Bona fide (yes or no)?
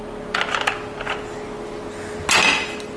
yes